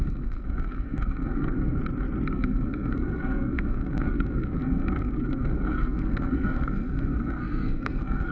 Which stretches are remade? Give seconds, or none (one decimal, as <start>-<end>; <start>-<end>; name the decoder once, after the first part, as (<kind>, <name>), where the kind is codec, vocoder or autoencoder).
0.0-1.8 (codec, SNAC); 2.3-8.3